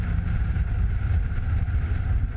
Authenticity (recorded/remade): remade